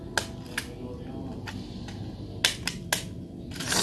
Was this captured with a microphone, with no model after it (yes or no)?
yes